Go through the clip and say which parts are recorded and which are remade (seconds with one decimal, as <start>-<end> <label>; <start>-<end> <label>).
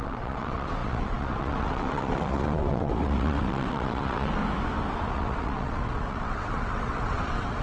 0.0-4.4 remade; 4.4-5.1 recorded; 5.1-7.6 remade